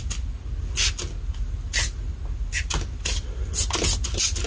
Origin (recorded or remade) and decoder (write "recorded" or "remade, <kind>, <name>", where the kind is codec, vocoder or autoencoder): recorded